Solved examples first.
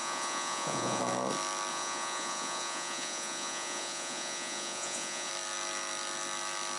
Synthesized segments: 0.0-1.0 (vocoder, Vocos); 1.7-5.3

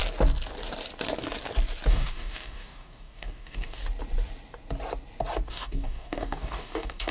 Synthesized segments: 1.9-3.8 (codec, DAC); 5.5-7.1

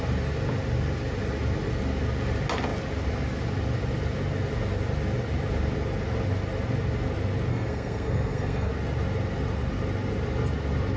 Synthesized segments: 7.5-8.7 (codec, SNAC)

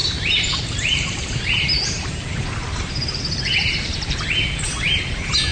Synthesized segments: 0.0-3.2 (vocoder, BigVGAN v2)

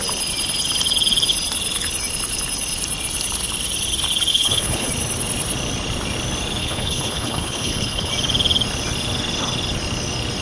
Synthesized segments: 4.3-4.9 (codec, HILCodec); 6.6-8.1